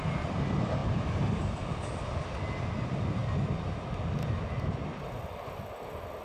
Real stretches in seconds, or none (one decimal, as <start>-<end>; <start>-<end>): 0.0-6.2